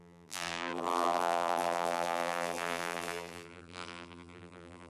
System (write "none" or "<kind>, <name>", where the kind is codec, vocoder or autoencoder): vocoder, BigVGAN v2